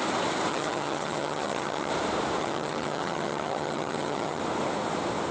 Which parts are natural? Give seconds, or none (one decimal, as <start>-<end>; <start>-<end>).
0.0-0.5; 1.9-2.4; 4.4-5.3